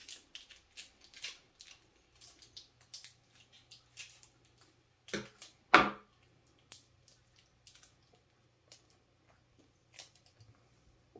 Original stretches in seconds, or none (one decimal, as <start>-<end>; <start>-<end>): 0.0-11.2